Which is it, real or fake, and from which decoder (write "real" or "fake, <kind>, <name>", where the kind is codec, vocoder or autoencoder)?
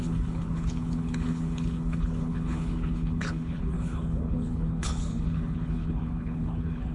fake, codec, HILCodec